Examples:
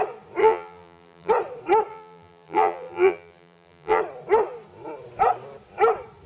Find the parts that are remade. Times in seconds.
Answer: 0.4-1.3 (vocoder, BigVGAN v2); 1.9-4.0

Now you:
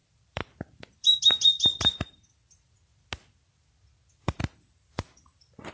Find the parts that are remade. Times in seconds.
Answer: 0.0-2.9 (vocoder, BigVGAN v2); 4.7-5.7

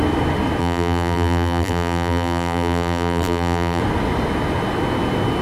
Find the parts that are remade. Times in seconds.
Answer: 0.6-3.8 (vocoder, BigVGAN v2)

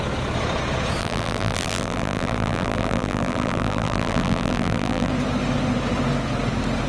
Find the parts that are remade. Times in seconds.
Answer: 1.0-5.1 (vocoder, BigVGAN v2)

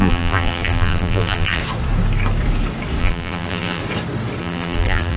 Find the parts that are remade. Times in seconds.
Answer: 0.0-1.6 (vocoder, BigVGAN v2); 3.0-3.8; 4.4-5.2

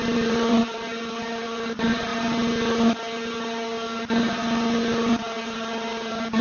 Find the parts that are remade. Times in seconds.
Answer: 0.0-2.1 (vocoder, BigVGAN v2); 5.1-6.4

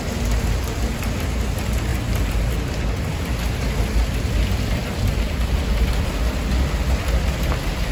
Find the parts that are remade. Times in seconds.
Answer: 0.0-1.9 (vocoder, BigVGAN v2); 4.7-7.9

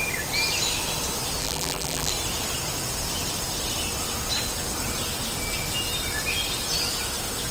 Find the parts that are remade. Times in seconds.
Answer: 1.4-2.1 (vocoder, BigVGAN v2)